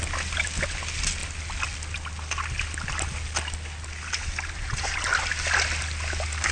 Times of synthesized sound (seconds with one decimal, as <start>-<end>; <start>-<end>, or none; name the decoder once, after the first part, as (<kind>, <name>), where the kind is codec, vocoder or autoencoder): none